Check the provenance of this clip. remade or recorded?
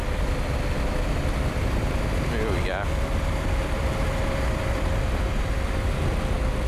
recorded